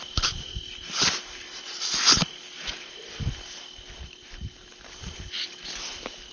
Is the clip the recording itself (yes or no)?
yes